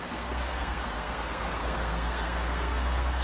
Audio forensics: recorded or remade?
remade